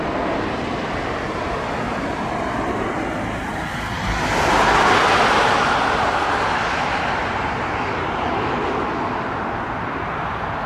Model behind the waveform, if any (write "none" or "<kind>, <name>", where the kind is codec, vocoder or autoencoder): none